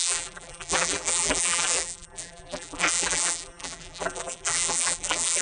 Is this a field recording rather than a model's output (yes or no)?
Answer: no